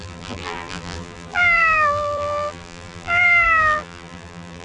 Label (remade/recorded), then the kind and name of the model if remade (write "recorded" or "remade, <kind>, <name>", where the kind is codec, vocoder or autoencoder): remade, vocoder, BigVGAN v2